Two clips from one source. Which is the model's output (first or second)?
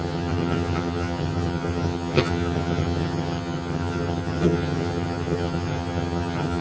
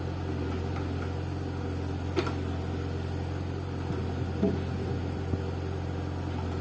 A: first